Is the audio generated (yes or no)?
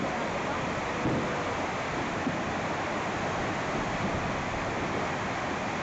no